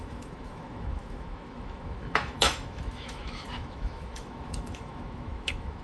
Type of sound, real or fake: fake